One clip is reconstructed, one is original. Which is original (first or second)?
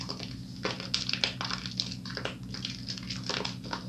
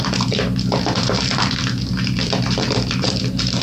first